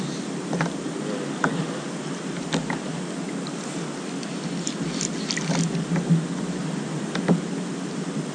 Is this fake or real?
real